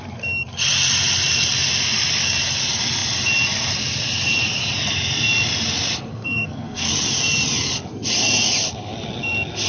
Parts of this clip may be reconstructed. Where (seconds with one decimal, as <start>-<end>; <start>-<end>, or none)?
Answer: 6.1-6.9

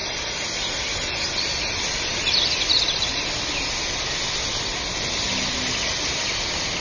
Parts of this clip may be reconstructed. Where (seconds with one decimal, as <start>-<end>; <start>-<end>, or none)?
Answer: 0.0-3.1